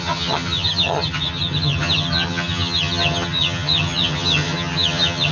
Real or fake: fake